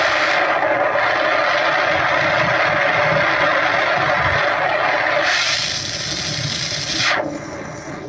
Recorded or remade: recorded